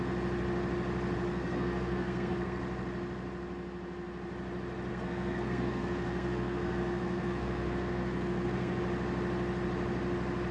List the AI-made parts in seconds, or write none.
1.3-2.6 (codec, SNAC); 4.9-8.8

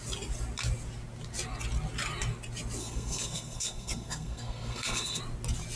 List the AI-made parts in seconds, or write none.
2.8-5.2 (codec, SNAC)

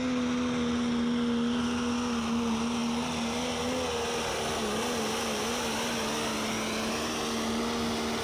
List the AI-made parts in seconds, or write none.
none